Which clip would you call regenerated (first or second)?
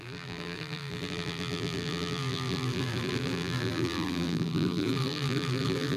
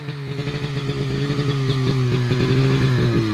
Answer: first